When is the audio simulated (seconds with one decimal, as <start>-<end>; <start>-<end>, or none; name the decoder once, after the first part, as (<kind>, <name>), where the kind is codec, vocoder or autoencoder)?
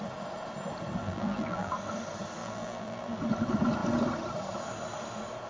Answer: 1.0-1.7 (vocoder, BigVGAN v2); 2.4-3.2